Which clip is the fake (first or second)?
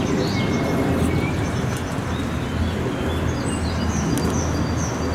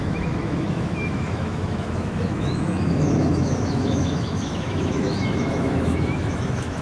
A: second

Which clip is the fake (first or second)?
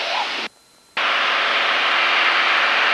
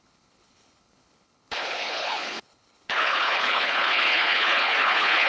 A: second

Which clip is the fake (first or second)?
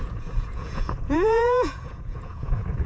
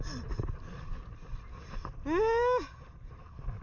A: first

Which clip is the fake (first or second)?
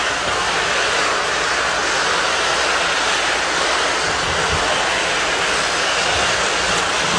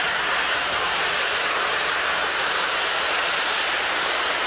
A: second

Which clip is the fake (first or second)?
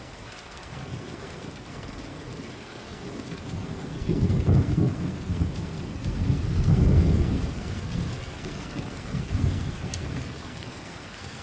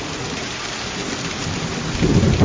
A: first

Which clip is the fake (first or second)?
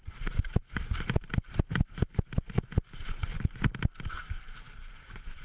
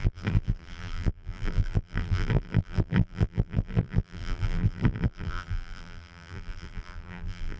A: second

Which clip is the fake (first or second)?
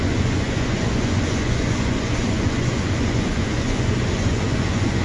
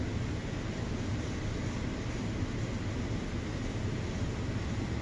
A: first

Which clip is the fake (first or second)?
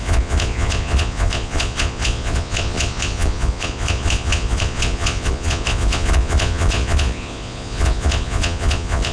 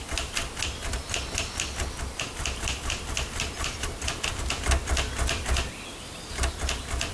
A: first